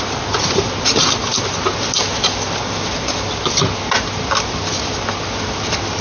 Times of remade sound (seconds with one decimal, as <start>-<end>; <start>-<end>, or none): none